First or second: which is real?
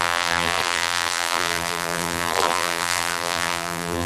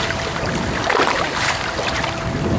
second